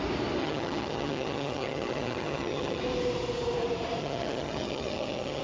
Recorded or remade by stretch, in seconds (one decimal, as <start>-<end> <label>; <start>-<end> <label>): 0.0-0.4 recorded; 0.4-2.8 remade; 2.8-4.0 recorded; 4.0-5.4 remade